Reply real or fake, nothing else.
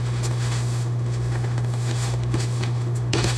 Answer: fake